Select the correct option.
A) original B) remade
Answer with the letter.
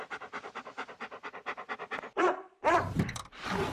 B